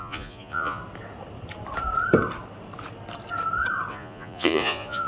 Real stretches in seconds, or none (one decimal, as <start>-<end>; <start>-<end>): 0.8-3.9